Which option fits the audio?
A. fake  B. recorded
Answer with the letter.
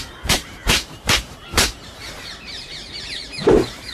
A